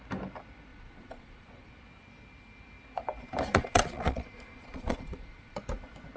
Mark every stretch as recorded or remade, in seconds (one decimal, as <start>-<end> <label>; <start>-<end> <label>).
0.0-0.7 recorded; 0.7-1.7 remade; 1.7-3.5 recorded; 3.5-5.6 remade; 5.6-6.2 recorded